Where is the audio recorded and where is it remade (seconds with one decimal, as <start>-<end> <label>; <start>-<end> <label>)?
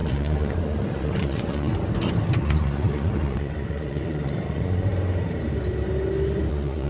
0.0-1.7 remade; 1.7-2.4 recorded; 2.4-4.9 remade; 4.9-6.5 recorded; 6.5-6.9 remade